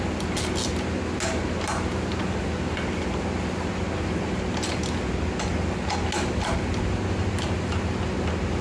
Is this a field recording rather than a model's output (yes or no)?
yes